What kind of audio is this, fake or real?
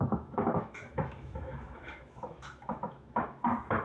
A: fake